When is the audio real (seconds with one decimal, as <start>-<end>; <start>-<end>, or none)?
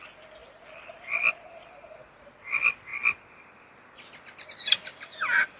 0.0-5.6